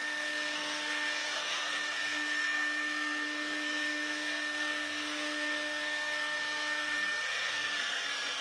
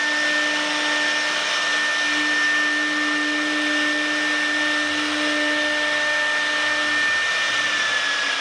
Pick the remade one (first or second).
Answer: first